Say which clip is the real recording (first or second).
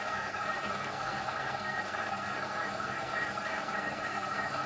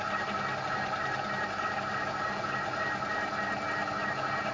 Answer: second